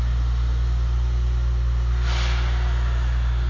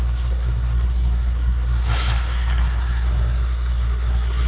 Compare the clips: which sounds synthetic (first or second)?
second